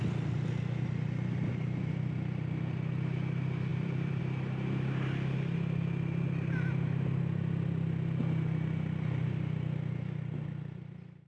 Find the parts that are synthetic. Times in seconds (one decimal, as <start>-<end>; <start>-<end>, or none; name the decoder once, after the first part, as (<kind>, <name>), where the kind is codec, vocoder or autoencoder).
3.7-4.2 (vocoder, BigVGAN v2)

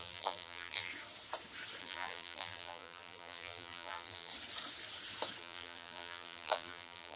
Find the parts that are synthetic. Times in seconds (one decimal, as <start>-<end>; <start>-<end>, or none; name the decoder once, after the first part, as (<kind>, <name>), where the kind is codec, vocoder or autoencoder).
0.0-0.9 (vocoder, BigVGAN v2); 1.8-4.3; 5.4-7.2

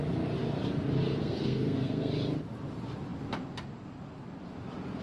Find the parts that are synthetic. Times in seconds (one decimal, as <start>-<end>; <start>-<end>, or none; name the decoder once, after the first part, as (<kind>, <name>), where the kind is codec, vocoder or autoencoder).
1.2-2.1 (codec, SNAC)

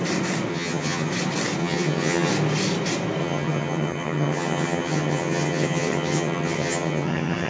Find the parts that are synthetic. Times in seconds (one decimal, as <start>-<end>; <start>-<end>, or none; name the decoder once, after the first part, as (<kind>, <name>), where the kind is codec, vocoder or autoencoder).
0.5-1.1 (vocoder, HiFi-GAN); 1.6-2.3; 3.2-7.5

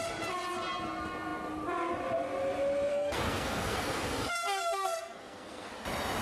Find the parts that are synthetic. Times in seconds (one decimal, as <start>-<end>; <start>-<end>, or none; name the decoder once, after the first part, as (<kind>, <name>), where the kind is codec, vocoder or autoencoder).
2.9-5.7 (codec, SNAC)

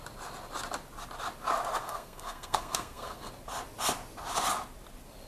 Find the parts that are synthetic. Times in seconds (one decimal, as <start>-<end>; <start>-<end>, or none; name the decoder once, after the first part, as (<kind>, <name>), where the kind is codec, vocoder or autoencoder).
1.8-3.3 (codec, SNAC)

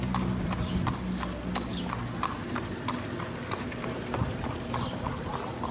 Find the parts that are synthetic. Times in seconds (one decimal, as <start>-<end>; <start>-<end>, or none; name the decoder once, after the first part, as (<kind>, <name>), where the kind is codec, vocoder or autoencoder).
none

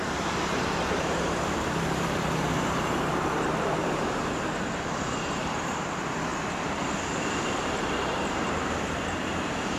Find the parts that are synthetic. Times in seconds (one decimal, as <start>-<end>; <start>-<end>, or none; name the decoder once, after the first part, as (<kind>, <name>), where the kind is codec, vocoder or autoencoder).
0.0-6.3 (vocoder, BigVGAN v2); 7.5-9.8